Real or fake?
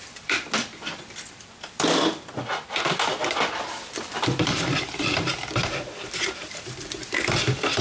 fake